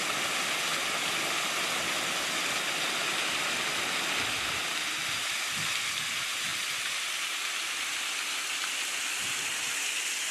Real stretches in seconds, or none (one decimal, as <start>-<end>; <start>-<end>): 0.0-10.3